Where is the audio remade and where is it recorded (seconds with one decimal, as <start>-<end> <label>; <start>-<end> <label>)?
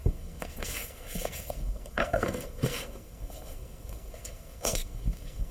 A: 0.0-5.5 remade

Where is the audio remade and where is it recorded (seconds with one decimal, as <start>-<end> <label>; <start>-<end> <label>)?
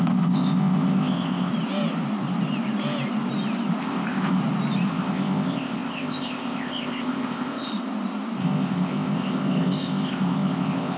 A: 0.0-1.5 remade; 1.5-3.8 recorded; 3.8-4.4 remade; 4.4-4.9 recorded; 4.9-7.7 remade; 7.7-8.4 recorded; 8.4-11.0 remade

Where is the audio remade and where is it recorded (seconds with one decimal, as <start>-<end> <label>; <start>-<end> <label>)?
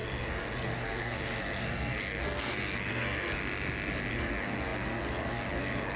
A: 0.0-3.4 remade; 3.4-4.1 recorded; 4.1-6.0 remade